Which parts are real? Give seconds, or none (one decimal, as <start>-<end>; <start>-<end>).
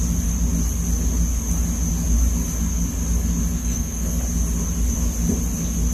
0.0-3.6; 4.1-5.9